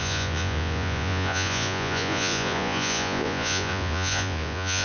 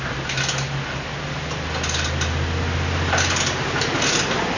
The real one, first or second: second